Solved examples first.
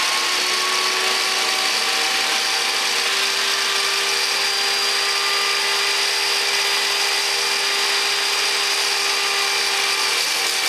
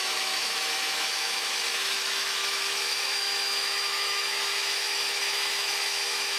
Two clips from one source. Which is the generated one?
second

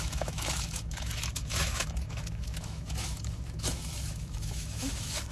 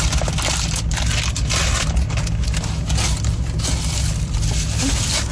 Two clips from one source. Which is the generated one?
first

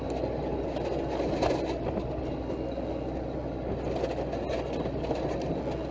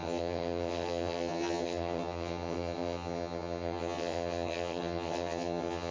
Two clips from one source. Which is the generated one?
second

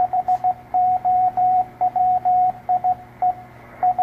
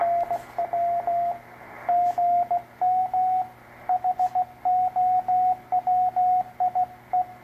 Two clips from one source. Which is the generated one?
first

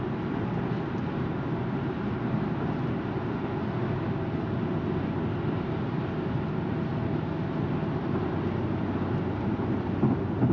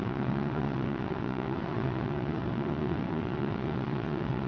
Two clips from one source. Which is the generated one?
second